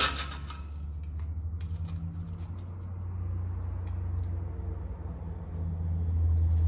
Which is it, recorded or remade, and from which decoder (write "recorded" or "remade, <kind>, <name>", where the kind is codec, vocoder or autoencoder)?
recorded